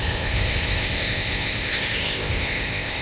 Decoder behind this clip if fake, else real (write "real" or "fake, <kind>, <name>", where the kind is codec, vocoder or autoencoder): fake, codec, ZipCodec